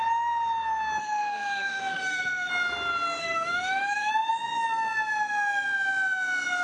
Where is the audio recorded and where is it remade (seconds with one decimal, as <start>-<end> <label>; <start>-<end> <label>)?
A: 0.0-1.0 recorded; 1.0-2.5 remade; 2.5-3.2 recorded; 3.2-4.1 remade; 4.1-6.6 recorded